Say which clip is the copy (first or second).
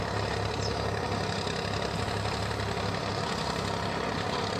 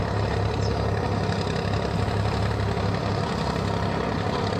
second